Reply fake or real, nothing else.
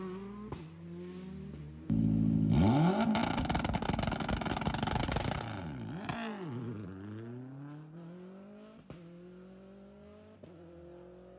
real